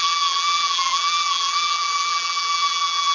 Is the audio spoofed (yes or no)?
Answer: yes